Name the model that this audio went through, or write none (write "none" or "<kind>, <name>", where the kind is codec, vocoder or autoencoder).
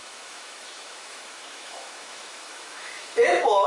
autoencoder, DAC-VAE